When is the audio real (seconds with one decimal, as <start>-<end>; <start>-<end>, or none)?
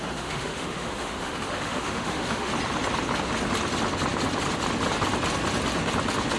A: 2.5-6.4